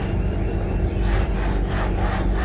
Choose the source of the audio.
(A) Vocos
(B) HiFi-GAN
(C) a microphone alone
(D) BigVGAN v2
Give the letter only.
C